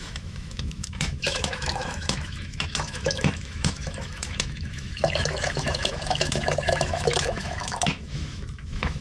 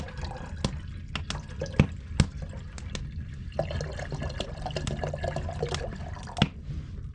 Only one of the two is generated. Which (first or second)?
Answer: first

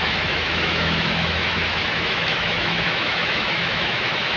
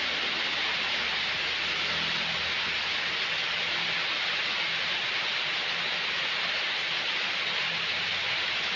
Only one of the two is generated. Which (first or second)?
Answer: first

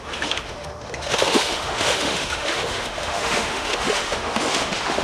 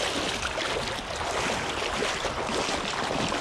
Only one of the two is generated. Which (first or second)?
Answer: first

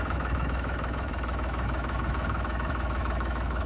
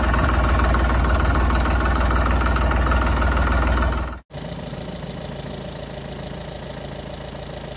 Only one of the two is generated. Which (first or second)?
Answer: first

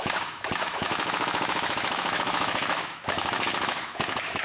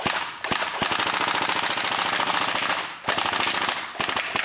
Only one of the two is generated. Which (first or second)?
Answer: first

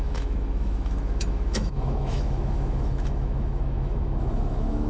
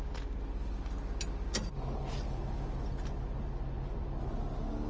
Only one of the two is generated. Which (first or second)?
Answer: first